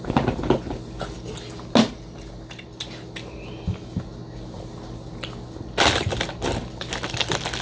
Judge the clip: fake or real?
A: real